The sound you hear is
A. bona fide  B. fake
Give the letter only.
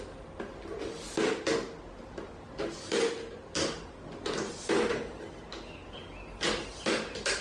A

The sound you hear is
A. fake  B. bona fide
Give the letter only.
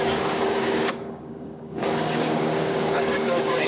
A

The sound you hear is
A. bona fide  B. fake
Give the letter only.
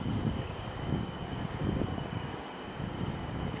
B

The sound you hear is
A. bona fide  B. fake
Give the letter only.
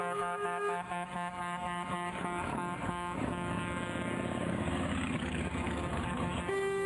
B